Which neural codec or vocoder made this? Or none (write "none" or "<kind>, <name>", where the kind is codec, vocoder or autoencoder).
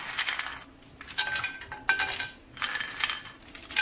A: none